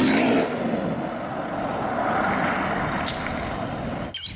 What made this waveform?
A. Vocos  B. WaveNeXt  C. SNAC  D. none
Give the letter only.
D